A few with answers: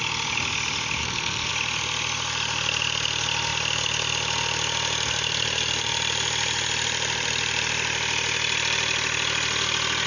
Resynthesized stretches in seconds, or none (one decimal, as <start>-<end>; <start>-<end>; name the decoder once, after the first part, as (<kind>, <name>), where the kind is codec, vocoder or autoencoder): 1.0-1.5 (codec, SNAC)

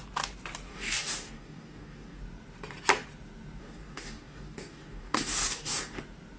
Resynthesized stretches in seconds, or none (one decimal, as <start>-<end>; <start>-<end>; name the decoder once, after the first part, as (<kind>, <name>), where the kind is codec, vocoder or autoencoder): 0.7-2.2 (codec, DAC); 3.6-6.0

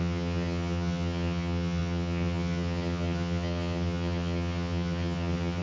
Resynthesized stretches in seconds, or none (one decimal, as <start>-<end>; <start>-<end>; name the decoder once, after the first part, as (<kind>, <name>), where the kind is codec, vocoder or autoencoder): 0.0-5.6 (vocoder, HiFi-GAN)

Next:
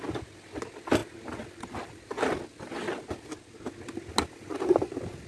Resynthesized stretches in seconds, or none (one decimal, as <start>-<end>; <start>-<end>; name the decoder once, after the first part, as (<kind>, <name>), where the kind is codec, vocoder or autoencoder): none

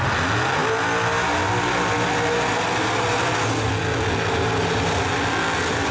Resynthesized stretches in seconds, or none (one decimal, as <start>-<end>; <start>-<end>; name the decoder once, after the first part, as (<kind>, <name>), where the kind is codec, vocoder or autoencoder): none

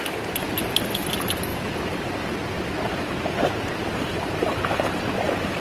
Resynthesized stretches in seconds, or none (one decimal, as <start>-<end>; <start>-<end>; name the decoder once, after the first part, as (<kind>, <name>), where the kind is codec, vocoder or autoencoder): 1.5-2.1 (vocoder, BigVGAN v2); 4.1-4.9

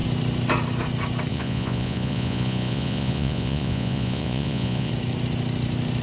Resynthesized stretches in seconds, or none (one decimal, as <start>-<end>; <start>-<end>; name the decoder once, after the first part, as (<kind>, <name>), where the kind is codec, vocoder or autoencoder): 1.3-4.9 (vocoder, Vocos)